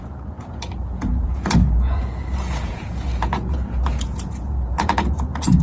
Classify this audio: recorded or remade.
remade